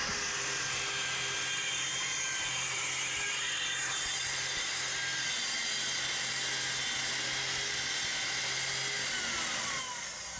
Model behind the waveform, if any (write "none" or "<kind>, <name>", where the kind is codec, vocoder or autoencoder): none